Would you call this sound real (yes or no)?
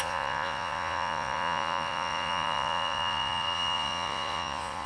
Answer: no